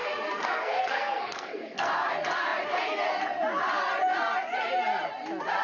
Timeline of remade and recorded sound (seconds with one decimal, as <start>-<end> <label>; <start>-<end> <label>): 0.0-1.9 remade; 1.9-5.6 recorded

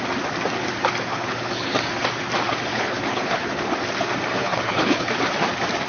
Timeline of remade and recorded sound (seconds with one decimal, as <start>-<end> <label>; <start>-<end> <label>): 0.0-1.1 recorded; 1.1-1.8 remade; 1.8-2.7 recorded; 2.7-3.6 remade; 3.6-4.4 recorded; 4.4-5.1 remade; 5.1-5.9 recorded

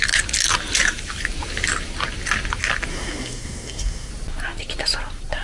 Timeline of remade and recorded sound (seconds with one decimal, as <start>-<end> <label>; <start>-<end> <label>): 0.0-2.9 recorded; 2.9-4.1 remade; 4.1-5.4 recorded

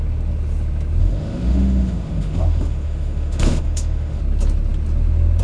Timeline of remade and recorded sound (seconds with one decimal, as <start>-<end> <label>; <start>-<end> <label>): 0.0-1.0 recorded; 1.0-4.2 remade; 4.2-5.4 recorded